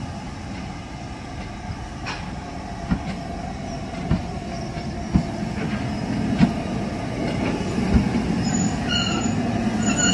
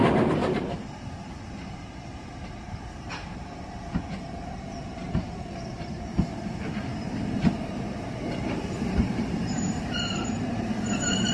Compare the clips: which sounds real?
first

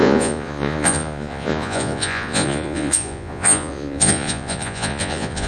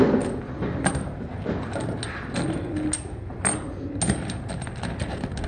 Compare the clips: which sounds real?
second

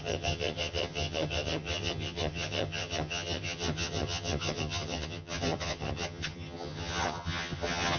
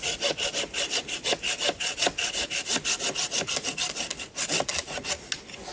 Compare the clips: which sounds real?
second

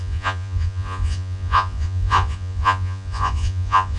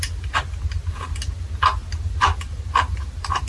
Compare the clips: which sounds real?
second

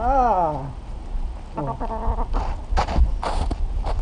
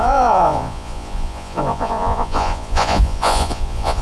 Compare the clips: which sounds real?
first